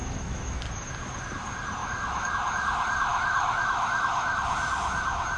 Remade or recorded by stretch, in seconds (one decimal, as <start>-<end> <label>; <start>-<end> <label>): 0.0-0.6 remade; 0.6-1.8 recorded; 1.8-2.3 remade; 2.3-3.1 recorded; 3.1-4.4 remade; 4.4-5.4 recorded